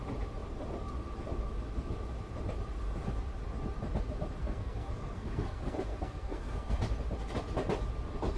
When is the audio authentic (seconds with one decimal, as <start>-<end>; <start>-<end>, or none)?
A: 0.0-4.4; 6.8-8.4